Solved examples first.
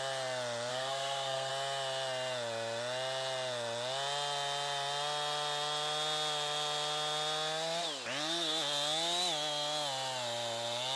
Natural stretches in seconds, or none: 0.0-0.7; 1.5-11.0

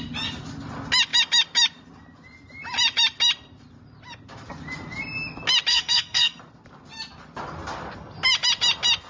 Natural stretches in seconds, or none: 0.0-5.7; 6.4-9.1

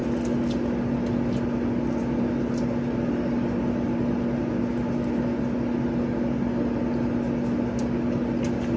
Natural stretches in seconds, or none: 0.0-8.8

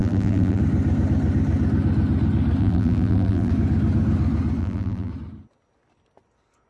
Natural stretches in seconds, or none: 0.6-2.6; 3.5-4.6; 5.1-6.7

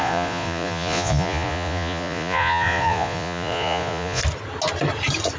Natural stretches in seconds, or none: 4.2-5.4

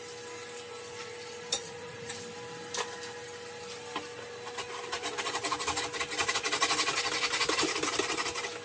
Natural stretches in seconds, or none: 0.0-1.6; 2.1-8.6